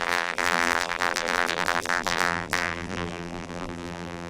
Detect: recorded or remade remade